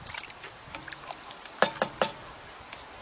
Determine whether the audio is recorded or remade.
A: recorded